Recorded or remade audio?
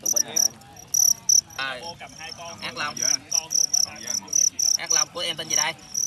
recorded